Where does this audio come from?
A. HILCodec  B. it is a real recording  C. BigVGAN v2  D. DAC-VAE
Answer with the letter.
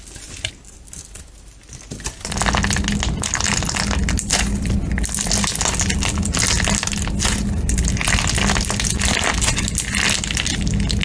B